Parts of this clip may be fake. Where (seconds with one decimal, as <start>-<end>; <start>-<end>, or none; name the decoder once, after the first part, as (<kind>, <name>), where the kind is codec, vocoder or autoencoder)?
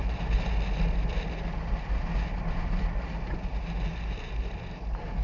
none